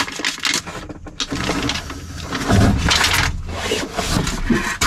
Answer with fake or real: real